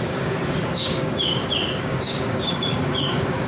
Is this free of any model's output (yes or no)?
no